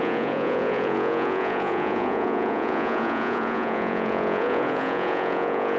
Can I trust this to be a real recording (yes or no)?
no